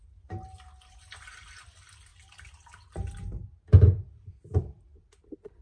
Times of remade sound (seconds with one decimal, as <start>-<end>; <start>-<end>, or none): none